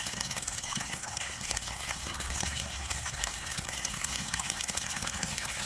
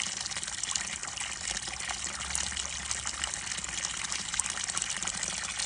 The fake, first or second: first